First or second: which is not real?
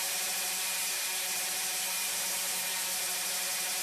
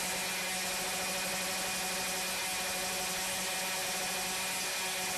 first